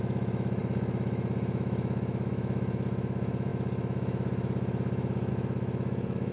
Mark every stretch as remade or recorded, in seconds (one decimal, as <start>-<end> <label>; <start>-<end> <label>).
0.0-6.3 remade